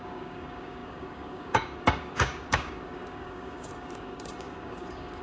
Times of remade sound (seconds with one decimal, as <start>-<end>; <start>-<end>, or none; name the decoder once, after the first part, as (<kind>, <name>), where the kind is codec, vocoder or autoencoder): 0.0-5.2 (codec, DAC)